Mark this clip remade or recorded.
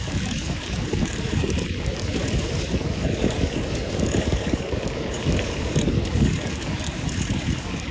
remade